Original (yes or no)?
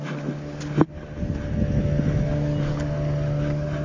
yes